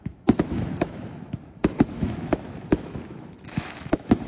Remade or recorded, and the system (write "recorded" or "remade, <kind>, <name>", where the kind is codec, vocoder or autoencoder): remade, autoencoder, DAC-VAE